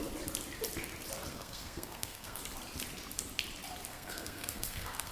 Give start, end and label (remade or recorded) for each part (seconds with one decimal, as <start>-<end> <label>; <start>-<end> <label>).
0.0-1.3 recorded; 1.3-2.4 remade; 2.4-3.9 recorded; 3.9-5.1 remade